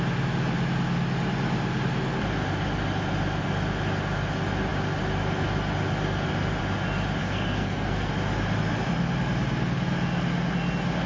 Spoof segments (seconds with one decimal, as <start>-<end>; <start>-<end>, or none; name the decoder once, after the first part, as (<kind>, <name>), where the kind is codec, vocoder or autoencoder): 7.2-8.1 (codec, SNAC)